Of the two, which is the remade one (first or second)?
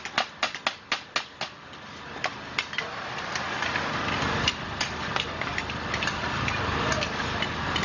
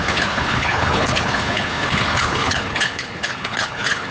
second